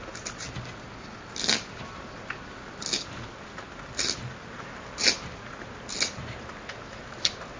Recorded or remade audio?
recorded